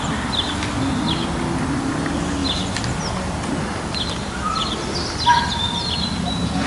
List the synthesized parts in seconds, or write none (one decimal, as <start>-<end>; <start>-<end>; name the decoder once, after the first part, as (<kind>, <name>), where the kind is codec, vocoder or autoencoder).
none